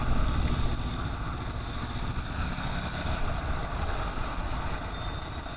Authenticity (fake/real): real